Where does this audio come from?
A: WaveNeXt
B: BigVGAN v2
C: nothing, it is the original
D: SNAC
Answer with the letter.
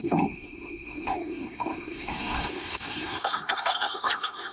D